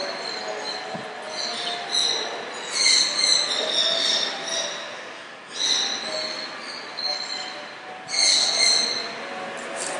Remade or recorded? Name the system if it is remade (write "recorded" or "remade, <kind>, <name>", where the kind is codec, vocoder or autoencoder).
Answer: recorded